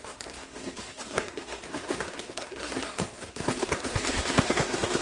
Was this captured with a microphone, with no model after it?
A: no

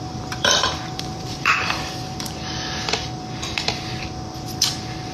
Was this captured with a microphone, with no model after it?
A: no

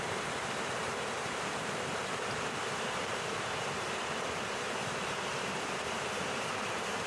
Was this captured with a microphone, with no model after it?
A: no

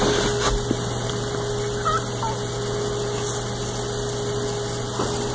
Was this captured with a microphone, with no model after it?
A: yes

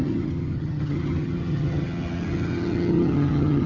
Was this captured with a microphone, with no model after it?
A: no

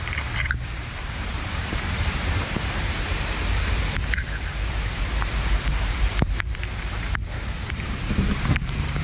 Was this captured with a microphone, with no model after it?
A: no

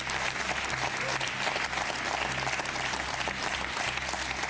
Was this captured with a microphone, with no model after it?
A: yes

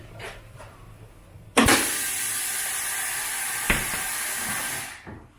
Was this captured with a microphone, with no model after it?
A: no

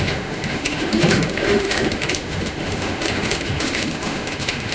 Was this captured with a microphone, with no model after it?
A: no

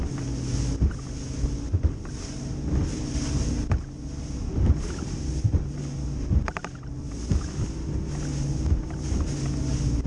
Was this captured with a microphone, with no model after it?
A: yes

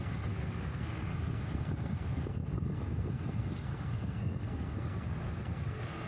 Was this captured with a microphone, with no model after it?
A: no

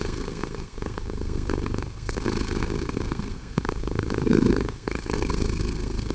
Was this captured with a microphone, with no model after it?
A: no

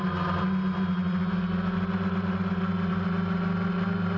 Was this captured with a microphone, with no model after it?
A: yes